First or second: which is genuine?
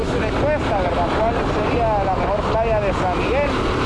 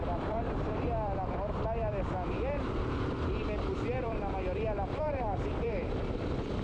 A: first